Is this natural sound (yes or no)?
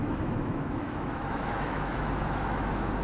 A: no